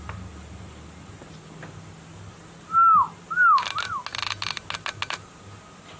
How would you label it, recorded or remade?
recorded